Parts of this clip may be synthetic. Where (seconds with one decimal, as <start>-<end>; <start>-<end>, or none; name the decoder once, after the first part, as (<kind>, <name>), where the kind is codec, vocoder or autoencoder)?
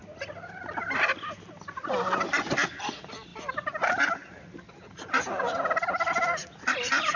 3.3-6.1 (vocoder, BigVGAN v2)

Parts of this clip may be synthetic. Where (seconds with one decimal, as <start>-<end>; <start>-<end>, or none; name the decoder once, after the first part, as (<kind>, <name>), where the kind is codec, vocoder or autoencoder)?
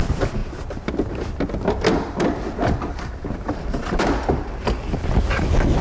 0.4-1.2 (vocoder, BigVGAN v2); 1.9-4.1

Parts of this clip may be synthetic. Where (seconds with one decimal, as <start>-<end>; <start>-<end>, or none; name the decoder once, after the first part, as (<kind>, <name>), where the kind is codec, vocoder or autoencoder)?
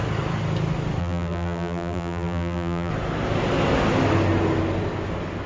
1.0-2.9 (vocoder, BigVGAN v2)